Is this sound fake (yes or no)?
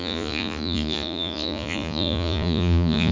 yes